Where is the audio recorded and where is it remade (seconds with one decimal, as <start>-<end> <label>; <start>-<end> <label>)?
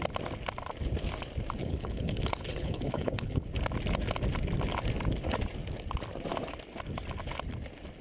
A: 0.0-1.6 recorded; 1.6-3.4 remade; 3.4-8.0 recorded